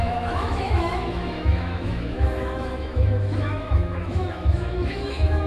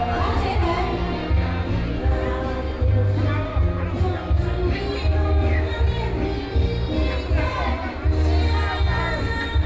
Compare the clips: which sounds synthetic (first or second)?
first